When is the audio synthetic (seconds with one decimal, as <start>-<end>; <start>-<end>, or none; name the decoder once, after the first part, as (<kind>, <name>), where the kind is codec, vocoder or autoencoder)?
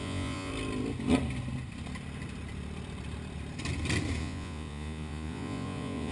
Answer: 0.0-0.5 (vocoder, Vocos); 4.2-6.1